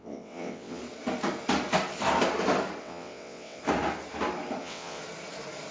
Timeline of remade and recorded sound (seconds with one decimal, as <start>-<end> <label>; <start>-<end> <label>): 0.0-0.8 remade; 0.8-2.8 recorded; 2.8-3.6 remade; 3.6-4.6 recorded; 4.6-5.0 remade; 5.0-5.7 recorded